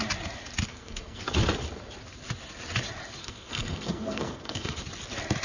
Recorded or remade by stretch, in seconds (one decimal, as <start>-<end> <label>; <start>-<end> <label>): 0.0-0.7 recorded; 0.7-1.2 remade; 1.2-3.2 recorded; 3.2-4.8 remade; 4.8-5.4 recorded